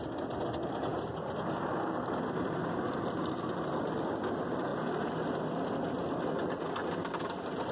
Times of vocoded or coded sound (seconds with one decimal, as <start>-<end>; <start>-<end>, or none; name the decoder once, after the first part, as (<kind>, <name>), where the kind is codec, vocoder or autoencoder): none